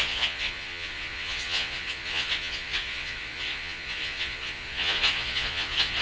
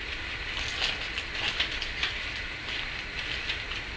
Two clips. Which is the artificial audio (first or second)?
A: first